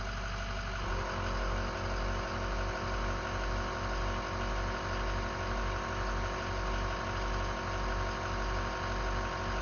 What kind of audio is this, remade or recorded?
recorded